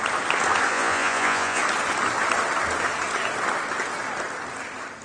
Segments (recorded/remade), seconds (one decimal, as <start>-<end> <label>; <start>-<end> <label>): 0.0-0.7 recorded; 0.7-1.6 remade; 1.6-5.0 recorded